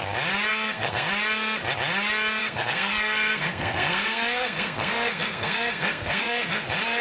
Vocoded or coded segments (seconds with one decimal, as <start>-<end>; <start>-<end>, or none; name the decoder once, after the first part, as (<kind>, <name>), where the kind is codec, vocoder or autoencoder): 0.5-1.1 (codec, SNAC); 2.4-6.6